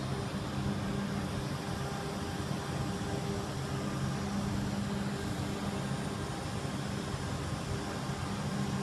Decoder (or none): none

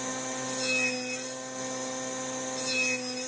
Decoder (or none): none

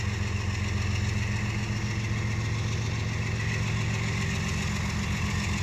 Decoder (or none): none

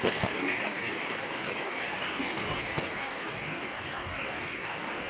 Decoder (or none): codec, DAC